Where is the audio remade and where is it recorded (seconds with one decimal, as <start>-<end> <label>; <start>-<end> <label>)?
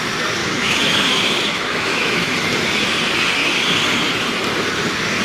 0.0-0.4 recorded; 0.4-2.3 remade; 2.3-5.2 recorded